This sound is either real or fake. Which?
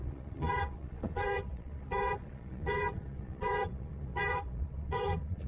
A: fake